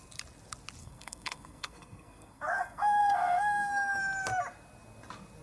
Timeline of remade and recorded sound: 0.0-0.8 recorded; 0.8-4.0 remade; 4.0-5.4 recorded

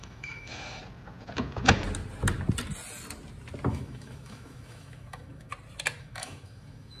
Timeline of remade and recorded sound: 0.0-0.8 remade; 0.8-3.7 recorded; 3.7-5.5 remade; 5.5-6.0 recorded; 6.0-7.0 remade

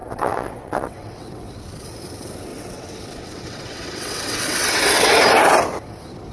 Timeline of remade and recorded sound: 0.0-1.5 remade; 1.5-2.5 recorded; 2.5-5.2 remade; 5.2-6.3 recorded

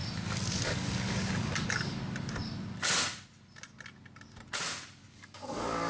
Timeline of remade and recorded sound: 0.0-0.5 recorded; 0.5-2.0 remade; 2.0-5.1 recorded; 5.1-5.9 remade